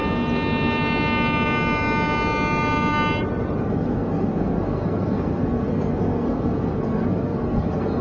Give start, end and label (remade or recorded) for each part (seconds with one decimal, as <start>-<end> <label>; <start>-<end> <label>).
0.0-3.6 recorded; 3.6-8.0 remade